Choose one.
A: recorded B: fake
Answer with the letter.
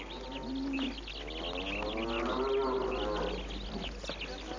A